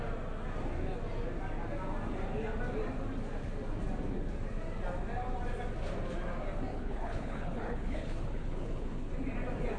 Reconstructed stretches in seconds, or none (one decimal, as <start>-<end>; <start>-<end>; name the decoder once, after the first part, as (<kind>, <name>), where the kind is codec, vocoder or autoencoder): 6.7-9.1 (codec, HILCodec)